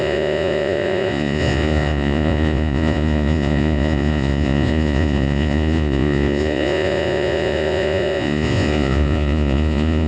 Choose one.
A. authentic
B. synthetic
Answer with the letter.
B